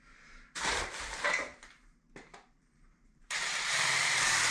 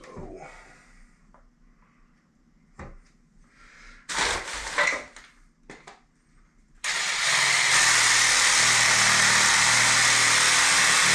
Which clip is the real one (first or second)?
second